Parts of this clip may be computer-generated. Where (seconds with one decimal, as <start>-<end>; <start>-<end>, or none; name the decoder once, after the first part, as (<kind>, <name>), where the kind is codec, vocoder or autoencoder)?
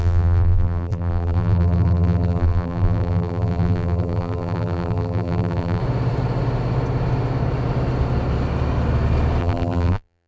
0.0-5.8 (vocoder, BigVGAN v2); 9.4-10.3